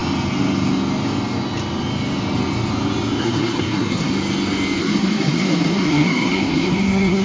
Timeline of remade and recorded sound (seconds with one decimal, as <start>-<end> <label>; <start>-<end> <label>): 0.0-3.2 recorded; 3.2-4.1 remade; 4.1-4.8 recorded; 4.8-7.2 remade